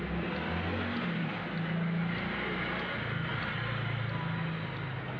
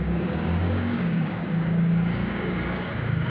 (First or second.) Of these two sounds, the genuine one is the first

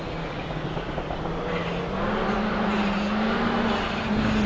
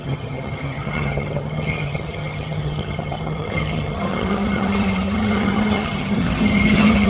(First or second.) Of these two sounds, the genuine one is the first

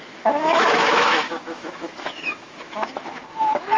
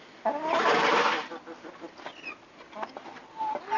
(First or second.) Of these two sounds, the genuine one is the second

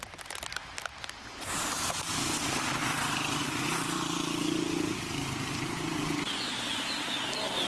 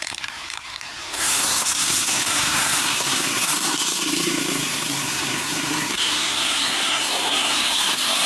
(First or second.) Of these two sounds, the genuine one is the first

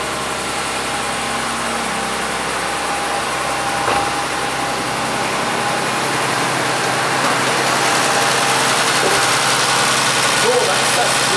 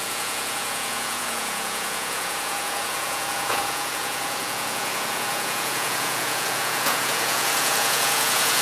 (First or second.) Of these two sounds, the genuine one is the first